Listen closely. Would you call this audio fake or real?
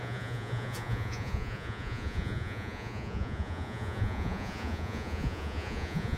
fake